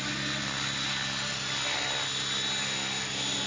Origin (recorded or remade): recorded